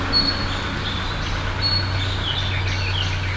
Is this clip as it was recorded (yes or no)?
yes